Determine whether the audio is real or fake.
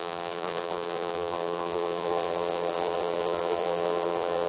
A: fake